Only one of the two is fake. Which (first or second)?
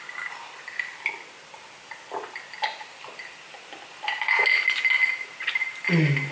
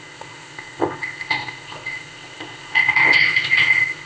second